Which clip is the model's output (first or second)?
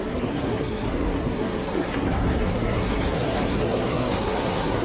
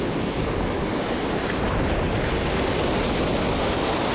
first